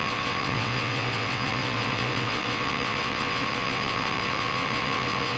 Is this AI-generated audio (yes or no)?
yes